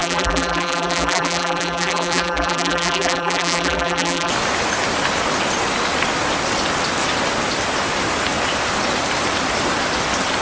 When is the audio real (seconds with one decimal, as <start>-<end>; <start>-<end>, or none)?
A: 4.3-10.4